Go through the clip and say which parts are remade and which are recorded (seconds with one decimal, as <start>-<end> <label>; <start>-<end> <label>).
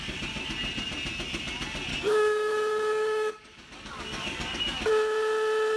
0.0-1.9 recorded; 1.9-4.9 remade; 4.9-5.8 recorded